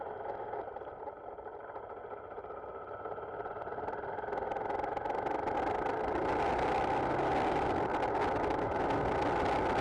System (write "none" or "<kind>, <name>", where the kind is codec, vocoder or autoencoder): none